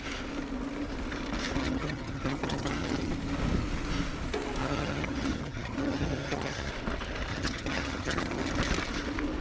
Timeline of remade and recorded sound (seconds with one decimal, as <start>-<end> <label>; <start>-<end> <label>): 0.0-1.6 recorded; 1.6-3.1 remade; 3.1-4.6 recorded; 4.6-6.7 remade; 6.7-7.3 recorded; 7.3-8.5 remade; 8.5-9.4 recorded